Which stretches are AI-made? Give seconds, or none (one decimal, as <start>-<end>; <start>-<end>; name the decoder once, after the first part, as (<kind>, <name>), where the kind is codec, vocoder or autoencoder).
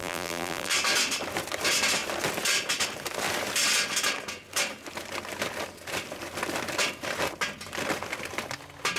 0.0-0.7 (vocoder, BigVGAN v2)